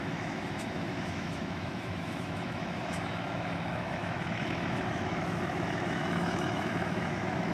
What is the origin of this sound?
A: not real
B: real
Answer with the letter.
A